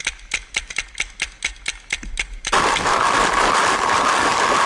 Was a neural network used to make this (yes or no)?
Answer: no